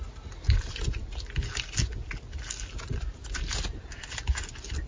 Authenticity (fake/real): real